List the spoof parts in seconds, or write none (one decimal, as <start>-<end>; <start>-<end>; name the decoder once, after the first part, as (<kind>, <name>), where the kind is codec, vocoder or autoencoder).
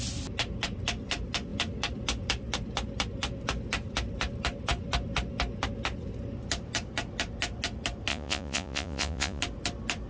8.1-9.4 (vocoder, Vocos)